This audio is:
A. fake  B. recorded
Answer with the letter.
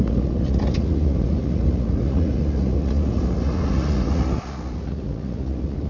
A